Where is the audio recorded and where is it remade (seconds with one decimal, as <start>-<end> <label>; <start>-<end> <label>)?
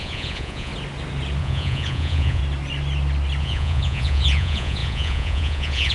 0.0-0.7 remade; 0.7-1.4 recorded; 1.4-2.4 remade; 2.4-3.4 recorded; 3.4-5.9 remade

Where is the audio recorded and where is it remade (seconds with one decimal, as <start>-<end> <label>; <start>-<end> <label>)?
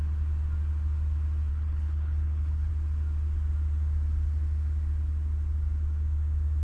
0.0-1.5 recorded; 1.5-2.7 remade; 2.7-6.6 recorded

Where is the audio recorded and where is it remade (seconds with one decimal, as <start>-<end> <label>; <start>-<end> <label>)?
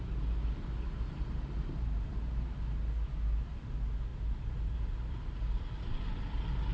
0.0-4.1 recorded; 4.1-5.7 remade; 5.7-6.7 recorded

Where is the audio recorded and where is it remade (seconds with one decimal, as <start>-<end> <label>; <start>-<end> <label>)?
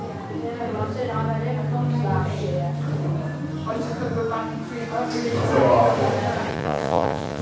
0.0-6.5 recorded; 6.5-7.4 remade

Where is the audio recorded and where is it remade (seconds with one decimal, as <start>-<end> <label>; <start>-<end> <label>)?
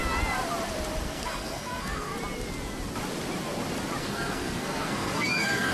0.0-1.0 recorded; 1.0-2.1 remade; 2.1-4.0 recorded; 4.0-5.7 remade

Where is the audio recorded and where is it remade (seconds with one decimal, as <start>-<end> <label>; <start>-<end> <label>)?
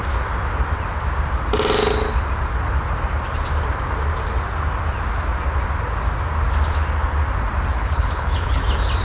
0.0-7.7 recorded; 7.7-8.6 remade; 8.6-9.0 recorded